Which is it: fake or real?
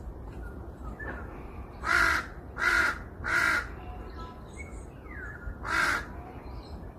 fake